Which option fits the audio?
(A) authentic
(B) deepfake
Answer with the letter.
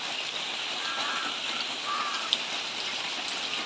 A